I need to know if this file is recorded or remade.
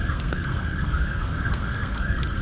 remade